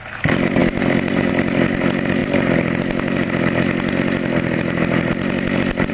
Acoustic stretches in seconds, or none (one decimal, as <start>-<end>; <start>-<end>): 0.0-5.9